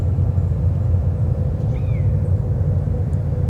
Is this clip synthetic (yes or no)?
no